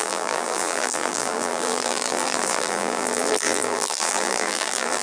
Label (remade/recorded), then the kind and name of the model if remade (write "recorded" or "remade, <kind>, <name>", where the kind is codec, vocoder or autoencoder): remade, vocoder, BigVGAN v2